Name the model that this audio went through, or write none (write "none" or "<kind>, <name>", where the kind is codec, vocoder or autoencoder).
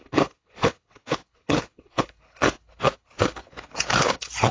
codec, HILCodec